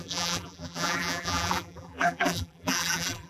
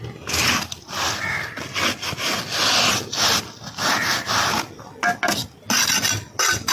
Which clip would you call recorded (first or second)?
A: second